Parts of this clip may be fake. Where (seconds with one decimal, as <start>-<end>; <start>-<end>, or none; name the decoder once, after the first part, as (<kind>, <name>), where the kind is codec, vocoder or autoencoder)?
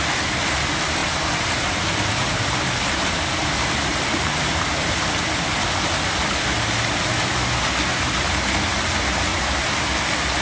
1.0-5.0 (vocoder, BigVGAN v2); 9.3-9.9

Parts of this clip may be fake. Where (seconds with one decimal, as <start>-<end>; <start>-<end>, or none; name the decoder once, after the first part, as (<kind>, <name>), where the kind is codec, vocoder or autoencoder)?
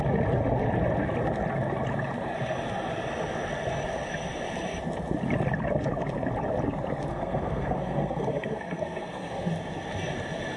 7.1-9.5 (codec, SNAC)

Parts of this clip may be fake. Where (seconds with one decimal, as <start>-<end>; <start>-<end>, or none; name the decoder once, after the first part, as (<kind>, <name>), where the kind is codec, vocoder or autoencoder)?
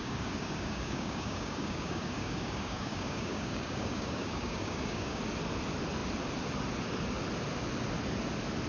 0.0-5.2 (codec, DAC)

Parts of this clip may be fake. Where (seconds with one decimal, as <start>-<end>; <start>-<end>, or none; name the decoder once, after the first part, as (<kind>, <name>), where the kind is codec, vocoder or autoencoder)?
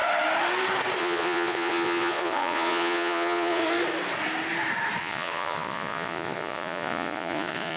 1.0-3.6 (vocoder, Vocos); 5.0-7.8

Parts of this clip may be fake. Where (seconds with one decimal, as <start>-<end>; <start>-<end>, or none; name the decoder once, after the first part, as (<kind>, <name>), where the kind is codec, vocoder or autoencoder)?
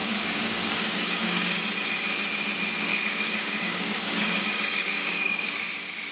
0.0-1.6 (codec, DAC); 2.9-5.5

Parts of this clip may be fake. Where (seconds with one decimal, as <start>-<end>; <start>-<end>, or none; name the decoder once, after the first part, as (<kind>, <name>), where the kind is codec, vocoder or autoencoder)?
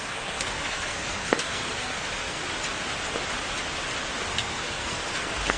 0.0-2.4 (codec, SNAC); 4.3-5.6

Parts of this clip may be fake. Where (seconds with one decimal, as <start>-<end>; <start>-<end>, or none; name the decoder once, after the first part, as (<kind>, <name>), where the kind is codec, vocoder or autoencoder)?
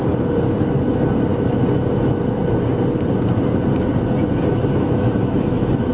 4.5-5.9 (autoencoder, DAC-VAE)